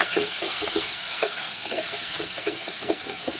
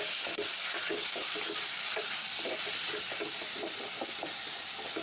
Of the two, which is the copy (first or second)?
first